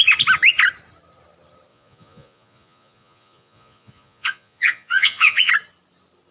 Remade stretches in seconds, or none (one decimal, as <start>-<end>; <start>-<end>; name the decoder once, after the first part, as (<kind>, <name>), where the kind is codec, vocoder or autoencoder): 1.7-5.5 (vocoder, Vocos)